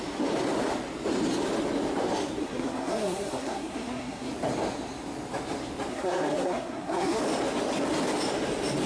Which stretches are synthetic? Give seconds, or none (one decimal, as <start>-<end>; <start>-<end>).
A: 2.4-4.3; 5.9-7.2